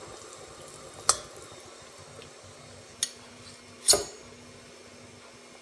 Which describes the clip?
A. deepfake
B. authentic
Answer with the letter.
B